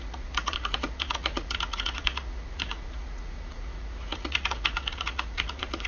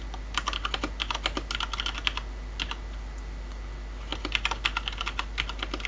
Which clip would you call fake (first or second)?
first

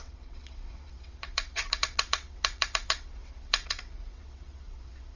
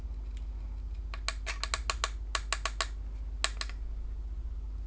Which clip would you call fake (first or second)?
first